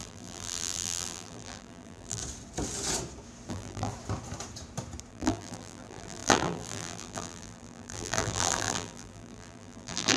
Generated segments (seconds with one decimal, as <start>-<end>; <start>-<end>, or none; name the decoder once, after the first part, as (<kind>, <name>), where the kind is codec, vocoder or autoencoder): 0.0-2.2 (vocoder, BigVGAN v2); 3.5-3.9; 5.1-10.2

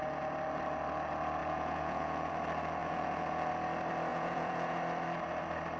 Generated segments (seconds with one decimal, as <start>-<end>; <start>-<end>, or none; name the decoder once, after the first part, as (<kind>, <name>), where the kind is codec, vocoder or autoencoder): 1.4-2.3 (vocoder, Vocos); 2.8-3.5; 4.1-4.8

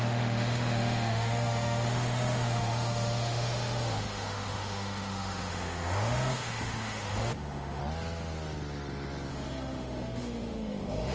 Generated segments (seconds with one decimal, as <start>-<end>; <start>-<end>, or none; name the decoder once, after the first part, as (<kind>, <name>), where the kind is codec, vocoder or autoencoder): 0.0-7.8 (autoencoder, DAC-VAE); 9.3-11.1

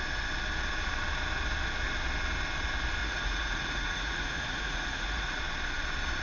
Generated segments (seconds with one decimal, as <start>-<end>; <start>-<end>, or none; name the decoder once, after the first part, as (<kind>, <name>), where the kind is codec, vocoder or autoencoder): 3.0-5.4 (vocoder, Vocos)

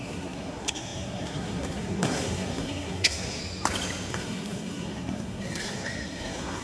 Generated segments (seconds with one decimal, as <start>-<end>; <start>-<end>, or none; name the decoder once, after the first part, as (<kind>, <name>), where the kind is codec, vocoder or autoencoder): 0.0-3.4 (codec, SNAC); 4.1-6.6

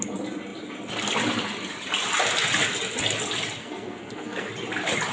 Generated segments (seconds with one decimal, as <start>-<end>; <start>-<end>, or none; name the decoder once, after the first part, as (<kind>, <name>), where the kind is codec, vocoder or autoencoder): 3.6-4.5 (codec, SNAC)

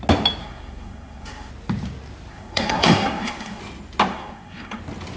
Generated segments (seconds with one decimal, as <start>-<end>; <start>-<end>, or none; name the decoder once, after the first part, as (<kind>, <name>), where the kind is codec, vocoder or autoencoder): 0.4-1.5 (codec, SNAC); 2.3-3.6; 4.1-4.8